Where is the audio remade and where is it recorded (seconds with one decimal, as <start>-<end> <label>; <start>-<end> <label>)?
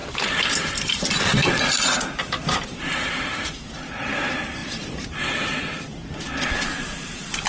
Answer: 0.0-3.5 remade; 3.5-4.6 recorded; 4.6-7.5 remade